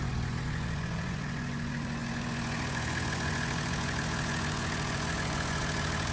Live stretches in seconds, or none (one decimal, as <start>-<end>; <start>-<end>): none